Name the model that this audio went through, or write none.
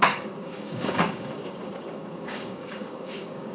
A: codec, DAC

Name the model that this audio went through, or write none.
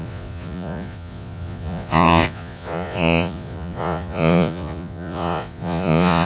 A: vocoder, Vocos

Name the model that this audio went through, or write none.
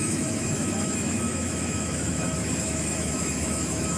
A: autoencoder, DAC-VAE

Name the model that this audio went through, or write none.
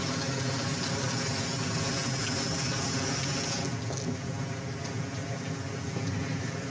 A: none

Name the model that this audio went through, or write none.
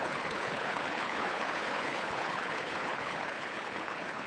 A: codec, HILCodec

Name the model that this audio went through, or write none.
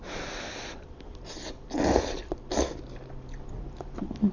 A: none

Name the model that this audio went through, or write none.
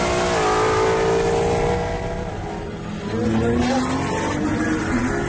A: none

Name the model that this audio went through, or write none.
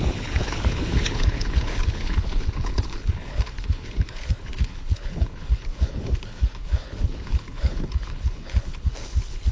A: codec, HILCodec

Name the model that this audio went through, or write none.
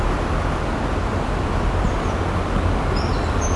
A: none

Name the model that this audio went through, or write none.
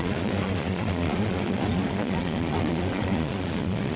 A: vocoder, Vocos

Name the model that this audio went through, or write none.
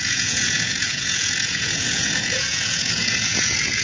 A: vocoder, Vocos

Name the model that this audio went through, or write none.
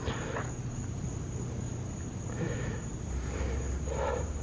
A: none